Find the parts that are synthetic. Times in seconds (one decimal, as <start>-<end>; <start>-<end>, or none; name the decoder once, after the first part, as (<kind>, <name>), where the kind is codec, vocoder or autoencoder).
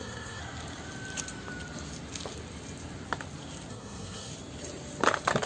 0.0-0.4 (codec, SNAC); 3.7-4.3